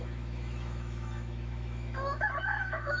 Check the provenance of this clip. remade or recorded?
remade